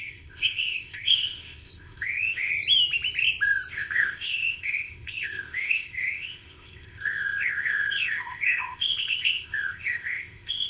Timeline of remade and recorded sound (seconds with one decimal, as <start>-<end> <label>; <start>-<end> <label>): 0.0-2.5 remade; 2.5-3.7 recorded; 3.7-10.7 remade

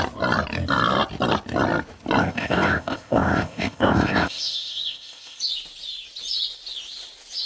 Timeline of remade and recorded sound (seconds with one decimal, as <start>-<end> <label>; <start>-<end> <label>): 0.0-2.2 recorded; 2.2-5.4 remade; 5.4-7.5 recorded

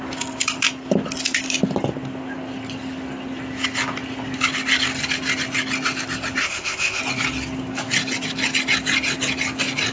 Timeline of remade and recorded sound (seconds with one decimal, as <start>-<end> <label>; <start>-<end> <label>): 0.0-6.4 recorded; 6.4-7.0 remade; 7.0-9.9 recorded